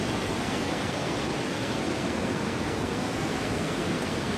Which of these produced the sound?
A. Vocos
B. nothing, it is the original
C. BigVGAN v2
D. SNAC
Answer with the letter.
D